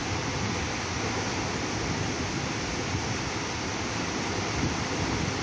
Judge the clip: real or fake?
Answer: real